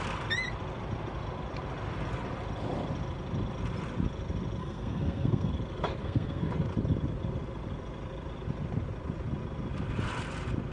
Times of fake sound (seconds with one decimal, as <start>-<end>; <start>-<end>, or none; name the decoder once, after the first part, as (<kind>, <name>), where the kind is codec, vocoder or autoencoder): 4.6-5.5 (codec, SNAC); 6.0-6.5